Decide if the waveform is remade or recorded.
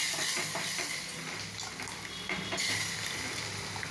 recorded